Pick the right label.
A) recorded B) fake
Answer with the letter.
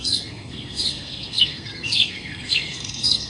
B